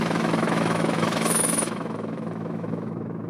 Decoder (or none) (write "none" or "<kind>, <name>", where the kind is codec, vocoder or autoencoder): autoencoder, DAC-VAE